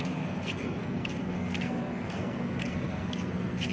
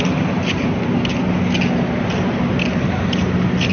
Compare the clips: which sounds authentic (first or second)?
second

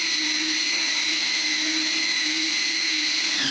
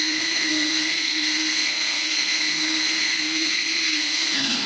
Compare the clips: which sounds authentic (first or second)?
first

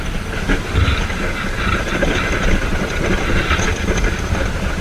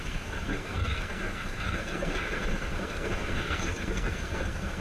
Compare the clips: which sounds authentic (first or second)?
first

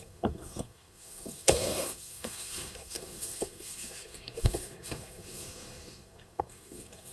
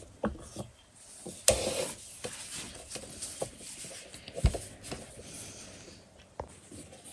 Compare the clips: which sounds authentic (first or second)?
second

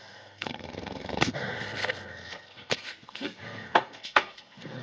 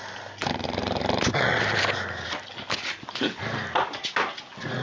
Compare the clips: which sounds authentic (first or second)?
second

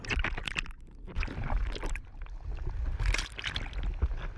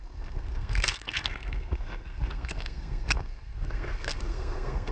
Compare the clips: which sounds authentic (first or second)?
first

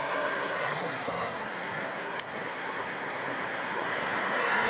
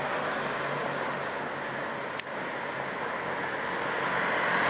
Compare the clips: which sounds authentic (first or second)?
second